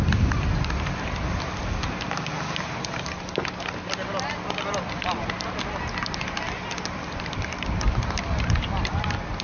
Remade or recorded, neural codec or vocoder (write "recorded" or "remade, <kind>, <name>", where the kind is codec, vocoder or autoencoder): recorded